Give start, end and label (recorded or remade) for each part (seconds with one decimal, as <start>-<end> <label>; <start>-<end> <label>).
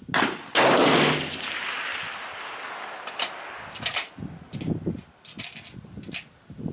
0.0-6.7 recorded